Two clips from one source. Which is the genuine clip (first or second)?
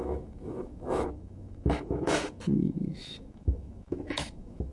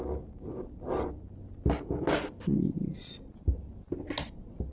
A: second